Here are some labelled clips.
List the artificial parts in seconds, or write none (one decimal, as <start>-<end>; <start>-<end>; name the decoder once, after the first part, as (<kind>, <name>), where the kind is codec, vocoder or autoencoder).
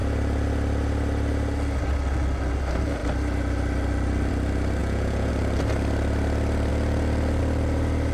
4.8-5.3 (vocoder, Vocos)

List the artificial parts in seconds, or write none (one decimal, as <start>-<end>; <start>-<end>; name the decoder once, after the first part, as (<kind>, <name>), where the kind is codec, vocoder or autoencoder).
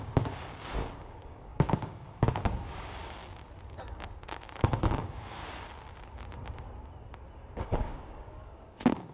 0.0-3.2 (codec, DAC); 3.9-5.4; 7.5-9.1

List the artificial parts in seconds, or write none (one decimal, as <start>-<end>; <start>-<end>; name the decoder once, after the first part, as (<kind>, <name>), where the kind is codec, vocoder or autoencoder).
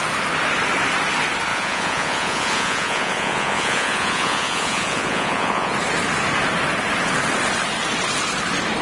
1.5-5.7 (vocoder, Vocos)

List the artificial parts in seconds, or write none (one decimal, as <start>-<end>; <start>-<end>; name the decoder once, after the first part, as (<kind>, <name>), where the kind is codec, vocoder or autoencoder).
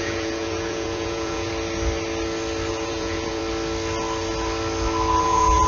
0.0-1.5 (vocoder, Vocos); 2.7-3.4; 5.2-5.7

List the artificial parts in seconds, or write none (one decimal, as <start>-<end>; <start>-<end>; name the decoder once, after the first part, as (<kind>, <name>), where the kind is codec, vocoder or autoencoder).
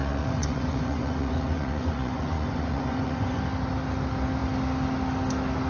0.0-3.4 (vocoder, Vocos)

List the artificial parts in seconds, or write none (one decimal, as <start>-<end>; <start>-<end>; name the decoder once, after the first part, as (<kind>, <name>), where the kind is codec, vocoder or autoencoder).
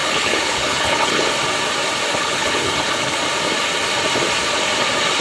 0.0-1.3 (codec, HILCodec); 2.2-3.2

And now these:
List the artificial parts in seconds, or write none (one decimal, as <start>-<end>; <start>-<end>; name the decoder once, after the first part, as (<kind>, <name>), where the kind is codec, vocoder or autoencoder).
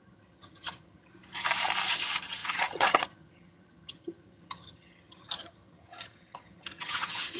0.0-1.1 (vocoder, HiFi-GAN); 1.9-7.4